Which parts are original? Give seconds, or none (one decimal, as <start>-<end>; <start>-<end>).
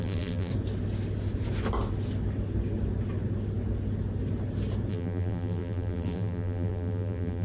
0.5-4.9